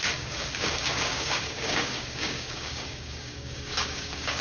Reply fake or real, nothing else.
fake